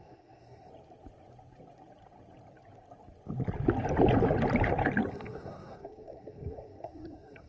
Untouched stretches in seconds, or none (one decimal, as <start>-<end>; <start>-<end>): 0.7-5.1